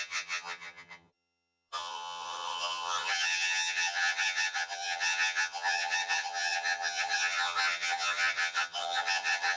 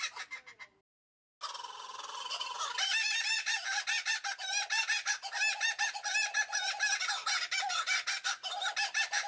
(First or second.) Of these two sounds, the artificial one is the first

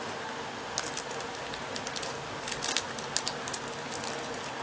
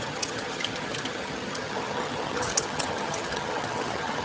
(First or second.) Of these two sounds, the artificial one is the second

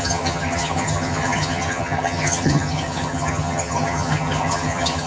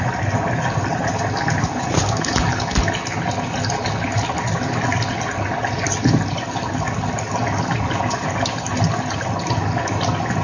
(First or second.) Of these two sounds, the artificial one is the first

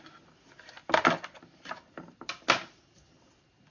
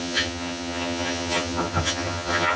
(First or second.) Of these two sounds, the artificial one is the second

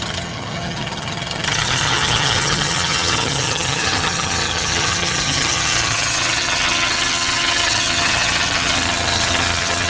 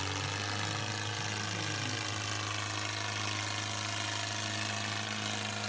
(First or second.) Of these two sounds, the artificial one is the first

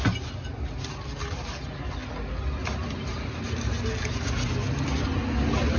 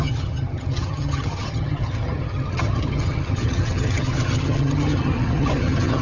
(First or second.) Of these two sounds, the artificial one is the second